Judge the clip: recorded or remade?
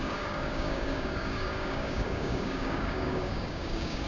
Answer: remade